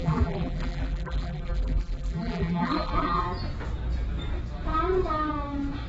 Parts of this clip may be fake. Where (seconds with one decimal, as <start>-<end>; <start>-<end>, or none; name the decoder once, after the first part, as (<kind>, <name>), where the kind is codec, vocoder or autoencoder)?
0.0-3.2 (vocoder, BigVGAN v2)